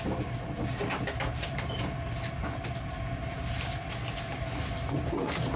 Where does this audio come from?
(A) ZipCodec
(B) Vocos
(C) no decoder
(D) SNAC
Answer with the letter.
C